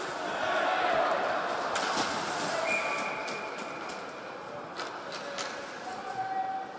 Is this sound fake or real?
real